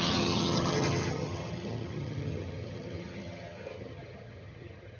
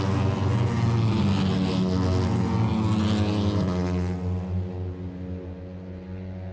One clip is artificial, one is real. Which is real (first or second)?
second